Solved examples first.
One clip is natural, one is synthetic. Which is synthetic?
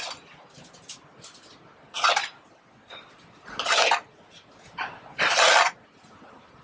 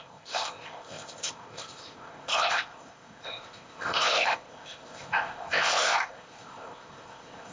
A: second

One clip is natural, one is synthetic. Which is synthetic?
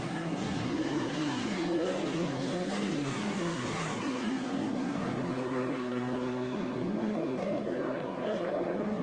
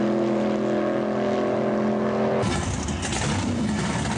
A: first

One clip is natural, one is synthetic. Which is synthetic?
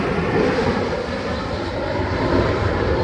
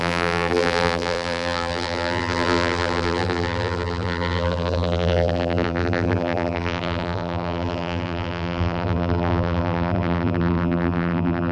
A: second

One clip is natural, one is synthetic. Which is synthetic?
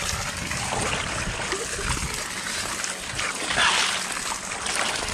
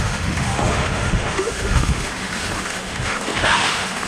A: second